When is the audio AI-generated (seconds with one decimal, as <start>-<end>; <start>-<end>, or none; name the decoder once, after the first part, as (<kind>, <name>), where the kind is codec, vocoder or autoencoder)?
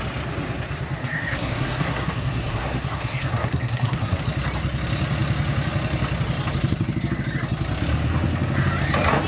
1.0-4.2 (codec, SNAC)